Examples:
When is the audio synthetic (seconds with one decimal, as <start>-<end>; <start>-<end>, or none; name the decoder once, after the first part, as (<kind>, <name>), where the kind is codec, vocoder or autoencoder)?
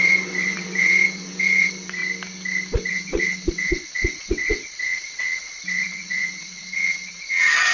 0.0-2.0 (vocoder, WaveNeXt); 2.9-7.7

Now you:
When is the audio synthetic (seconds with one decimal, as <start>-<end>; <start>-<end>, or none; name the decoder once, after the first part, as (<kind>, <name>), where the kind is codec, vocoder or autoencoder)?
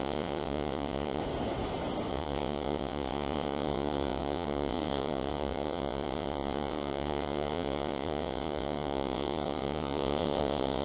0.0-1.2 (vocoder, WaveNeXt); 2.1-10.8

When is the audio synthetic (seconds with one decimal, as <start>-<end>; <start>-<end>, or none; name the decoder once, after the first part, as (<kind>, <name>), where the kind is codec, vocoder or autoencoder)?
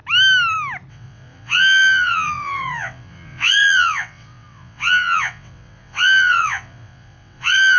0.9-7.8 (vocoder, WaveNeXt)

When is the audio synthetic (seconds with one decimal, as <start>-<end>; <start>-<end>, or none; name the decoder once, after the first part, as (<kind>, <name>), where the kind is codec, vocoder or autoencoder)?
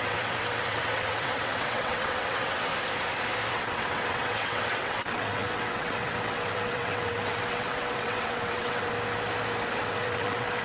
0.0-2.7 (vocoder, WaveNeXt); 3.5-8.9; 9.8-10.6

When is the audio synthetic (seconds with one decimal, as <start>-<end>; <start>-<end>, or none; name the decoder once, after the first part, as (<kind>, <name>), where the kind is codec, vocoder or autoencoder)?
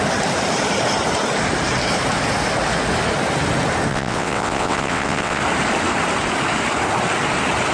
3.9-5.4 (vocoder, WaveNeXt)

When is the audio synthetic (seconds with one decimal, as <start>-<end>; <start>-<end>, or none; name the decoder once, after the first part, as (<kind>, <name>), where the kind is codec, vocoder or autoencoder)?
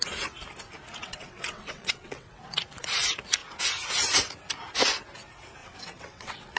1.0-2.3 (vocoder, WaveNeXt); 5.6-6.6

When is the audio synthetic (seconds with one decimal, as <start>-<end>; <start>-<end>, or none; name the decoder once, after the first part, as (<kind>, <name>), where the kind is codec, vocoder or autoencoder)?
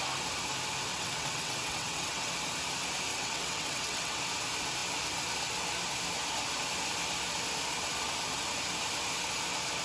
0.9-2.3 (vocoder, WaveNeXt); 3.1-4.2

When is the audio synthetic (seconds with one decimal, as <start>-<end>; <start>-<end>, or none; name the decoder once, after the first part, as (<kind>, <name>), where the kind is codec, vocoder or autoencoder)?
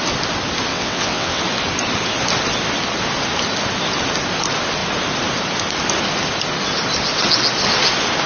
0.7-1.4 (vocoder, WaveNeXt)